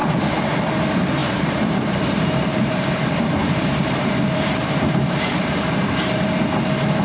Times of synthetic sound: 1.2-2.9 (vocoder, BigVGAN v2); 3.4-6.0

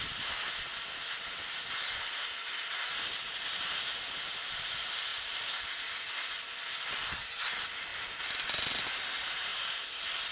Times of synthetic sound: 0.7-2.4 (vocoder, BigVGAN v2); 9.5-10.3

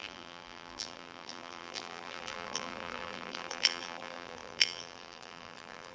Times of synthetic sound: 0.0-5.9 (vocoder, BigVGAN v2)

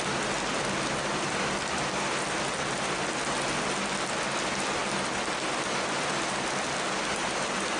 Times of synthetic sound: none

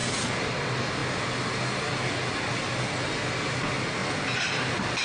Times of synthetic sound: 0.0-0.6 (vocoder, BigVGAN v2)

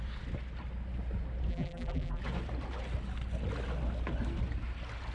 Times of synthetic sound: 1.5-2.2 (vocoder, BigVGAN v2)

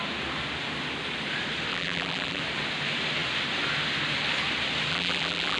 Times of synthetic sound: 1.7-2.4 (vocoder, BigVGAN v2); 4.9-5.6

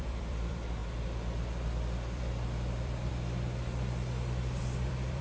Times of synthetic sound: 0.0-3.1 (vocoder, BigVGAN v2); 4.6-5.2